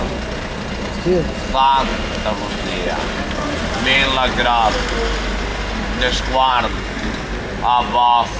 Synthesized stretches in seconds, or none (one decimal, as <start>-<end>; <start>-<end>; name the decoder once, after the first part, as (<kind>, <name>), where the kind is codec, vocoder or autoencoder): none